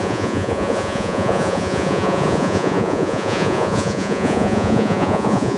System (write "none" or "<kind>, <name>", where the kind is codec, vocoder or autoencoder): vocoder, Vocos